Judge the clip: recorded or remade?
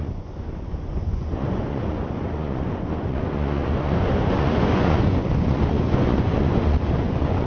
remade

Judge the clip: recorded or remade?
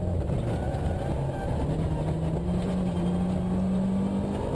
recorded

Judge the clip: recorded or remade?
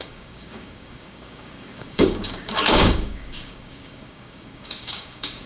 remade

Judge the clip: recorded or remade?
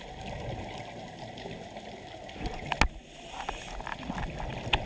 recorded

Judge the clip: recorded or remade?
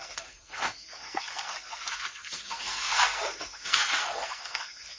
remade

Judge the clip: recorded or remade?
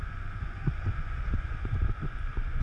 remade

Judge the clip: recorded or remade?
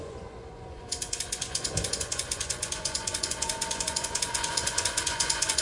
remade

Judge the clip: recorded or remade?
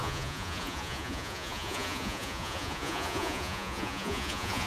remade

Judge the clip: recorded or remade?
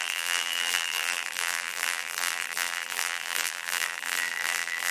remade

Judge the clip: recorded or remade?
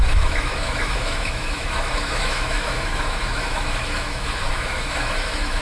remade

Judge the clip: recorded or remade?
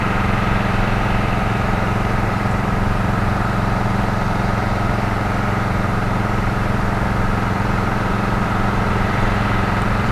remade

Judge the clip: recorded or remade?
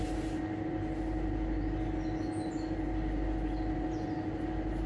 recorded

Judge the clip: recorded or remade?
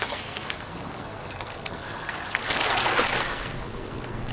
remade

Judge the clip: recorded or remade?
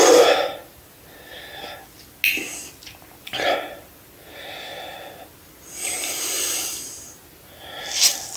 recorded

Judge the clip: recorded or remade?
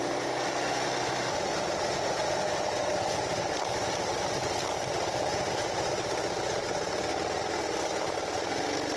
recorded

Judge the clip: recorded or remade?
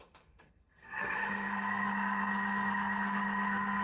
remade